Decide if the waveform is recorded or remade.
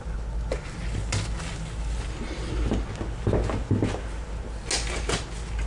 recorded